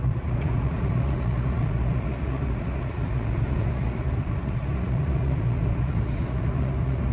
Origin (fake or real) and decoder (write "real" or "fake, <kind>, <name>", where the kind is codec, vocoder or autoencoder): fake, vocoder, Vocos